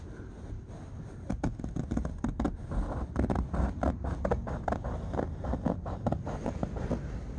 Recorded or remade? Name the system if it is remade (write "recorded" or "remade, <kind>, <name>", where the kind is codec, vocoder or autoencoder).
recorded